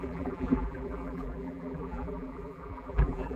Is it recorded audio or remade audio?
remade